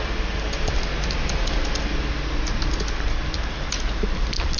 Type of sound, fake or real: real